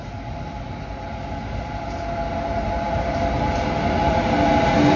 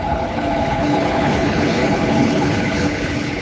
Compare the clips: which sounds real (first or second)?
first